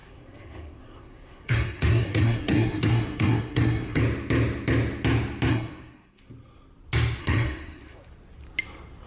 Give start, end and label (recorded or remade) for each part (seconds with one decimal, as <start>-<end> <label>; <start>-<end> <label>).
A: 0.0-4.0 remade; 4.0-5.5 recorded; 5.5-6.2 remade; 6.2-7.2 recorded; 7.2-8.0 remade; 8.0-9.1 recorded